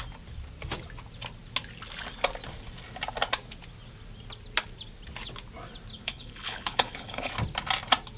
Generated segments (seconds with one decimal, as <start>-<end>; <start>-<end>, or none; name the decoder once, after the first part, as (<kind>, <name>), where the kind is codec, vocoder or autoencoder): 5.9-7.3 (codec, HILCodec)